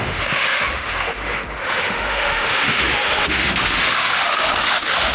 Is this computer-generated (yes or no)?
yes